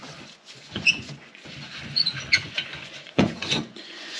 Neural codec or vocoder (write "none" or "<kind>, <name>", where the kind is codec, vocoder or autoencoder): vocoder, Vocos